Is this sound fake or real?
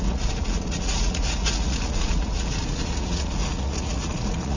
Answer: fake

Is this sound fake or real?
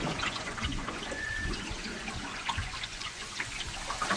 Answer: fake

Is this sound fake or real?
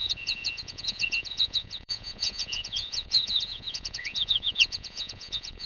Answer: fake